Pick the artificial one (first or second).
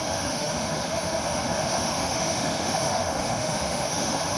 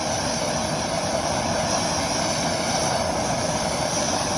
first